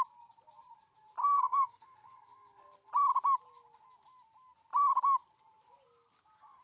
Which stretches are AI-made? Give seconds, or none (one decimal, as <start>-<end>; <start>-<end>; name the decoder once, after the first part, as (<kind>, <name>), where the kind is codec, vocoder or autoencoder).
1.2-2.9 (codec, SNAC)

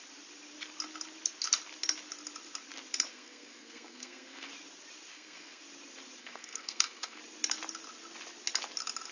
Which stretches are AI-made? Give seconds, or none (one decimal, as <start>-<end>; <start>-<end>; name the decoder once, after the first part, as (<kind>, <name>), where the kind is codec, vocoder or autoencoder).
3.1-4.5 (codec, SNAC); 5.1-5.6; 6.2-7.2

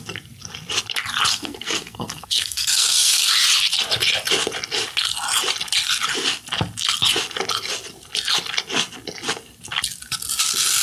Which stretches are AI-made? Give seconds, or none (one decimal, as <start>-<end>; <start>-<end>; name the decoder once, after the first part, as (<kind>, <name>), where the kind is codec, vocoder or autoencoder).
1.3-3.3 (codec, SNAC)

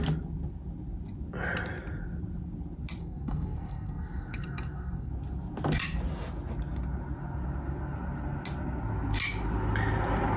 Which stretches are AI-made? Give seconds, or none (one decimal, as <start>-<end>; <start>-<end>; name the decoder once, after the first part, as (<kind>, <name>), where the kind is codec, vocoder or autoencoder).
3.0-5.1 (codec, SNAC)

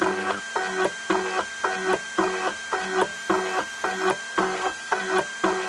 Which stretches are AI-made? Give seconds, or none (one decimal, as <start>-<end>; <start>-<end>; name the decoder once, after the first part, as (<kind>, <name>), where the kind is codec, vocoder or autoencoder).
4.3-5.0 (codec, SNAC)

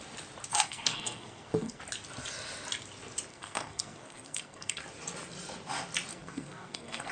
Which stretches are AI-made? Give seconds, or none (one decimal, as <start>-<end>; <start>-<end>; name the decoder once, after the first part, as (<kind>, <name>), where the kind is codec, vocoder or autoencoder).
0.5-1.8 (codec, SNAC); 3.3-4.8; 6.1-7.1

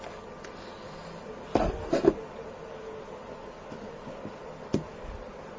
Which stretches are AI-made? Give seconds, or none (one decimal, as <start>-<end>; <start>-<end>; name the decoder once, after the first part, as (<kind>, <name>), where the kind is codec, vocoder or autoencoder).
none